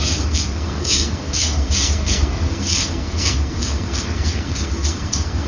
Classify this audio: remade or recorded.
remade